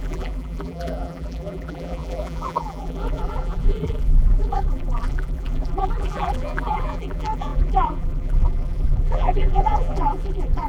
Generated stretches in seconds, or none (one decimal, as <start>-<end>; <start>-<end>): 0.0-10.7